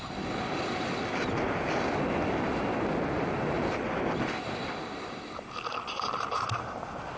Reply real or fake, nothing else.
real